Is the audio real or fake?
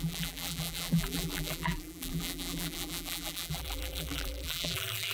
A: fake